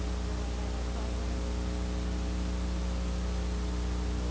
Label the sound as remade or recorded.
recorded